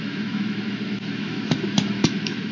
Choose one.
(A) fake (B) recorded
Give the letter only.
A